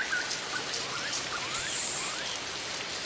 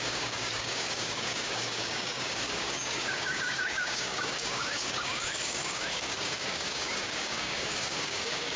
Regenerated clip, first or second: second